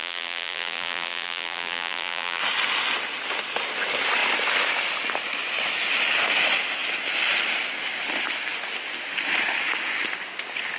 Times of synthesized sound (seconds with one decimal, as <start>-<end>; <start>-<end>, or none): 0.0-2.4